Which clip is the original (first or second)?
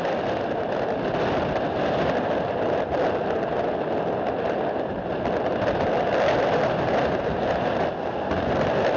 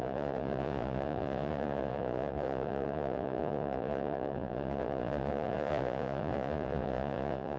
first